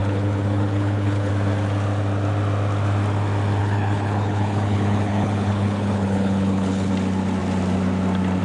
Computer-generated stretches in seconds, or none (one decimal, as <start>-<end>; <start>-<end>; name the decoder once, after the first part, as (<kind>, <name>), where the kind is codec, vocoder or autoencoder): 0.0-1.3 (codec, HILCodec); 3.6-6.9